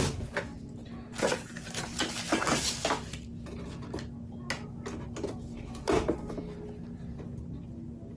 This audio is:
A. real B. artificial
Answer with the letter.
A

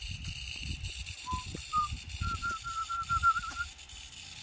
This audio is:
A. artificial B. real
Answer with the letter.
A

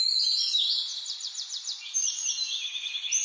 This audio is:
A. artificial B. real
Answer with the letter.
A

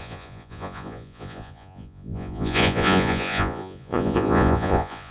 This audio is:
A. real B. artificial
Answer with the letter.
B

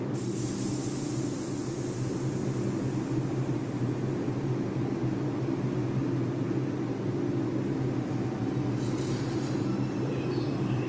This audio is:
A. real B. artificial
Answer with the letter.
A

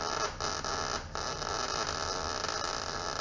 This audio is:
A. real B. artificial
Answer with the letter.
A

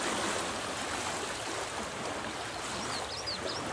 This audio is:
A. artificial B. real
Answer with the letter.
B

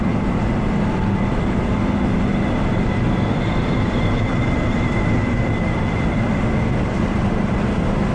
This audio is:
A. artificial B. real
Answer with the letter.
A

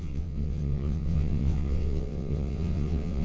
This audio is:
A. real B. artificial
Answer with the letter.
B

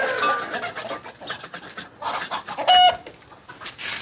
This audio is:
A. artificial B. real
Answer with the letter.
B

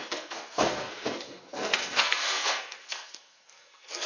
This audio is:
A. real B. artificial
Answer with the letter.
B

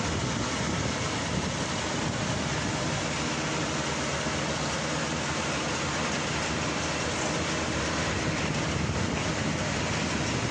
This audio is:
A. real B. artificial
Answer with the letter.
A